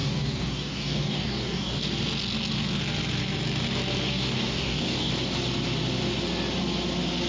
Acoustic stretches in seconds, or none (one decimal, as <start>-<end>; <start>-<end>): 1.8-4.1; 5.1-7.3